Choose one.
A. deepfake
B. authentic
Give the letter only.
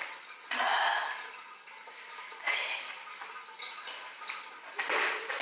B